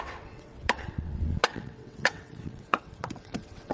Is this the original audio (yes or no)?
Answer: no